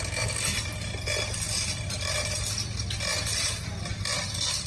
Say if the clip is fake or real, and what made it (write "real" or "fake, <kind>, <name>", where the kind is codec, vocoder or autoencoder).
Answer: real